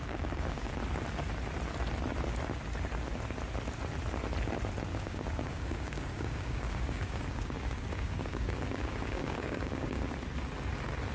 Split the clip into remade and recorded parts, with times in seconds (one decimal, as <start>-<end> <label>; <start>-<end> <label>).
0.0-0.7 remade; 0.7-4.9 recorded; 4.9-10.1 remade; 10.1-11.1 recorded